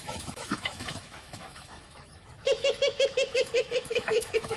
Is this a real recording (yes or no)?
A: no